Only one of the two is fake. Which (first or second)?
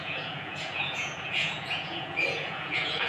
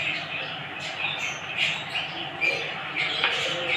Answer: first